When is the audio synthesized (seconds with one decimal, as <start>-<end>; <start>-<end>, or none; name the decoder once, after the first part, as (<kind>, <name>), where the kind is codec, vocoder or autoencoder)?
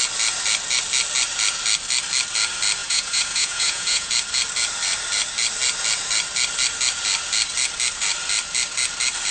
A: 2.8-4.1 (vocoder, Vocos)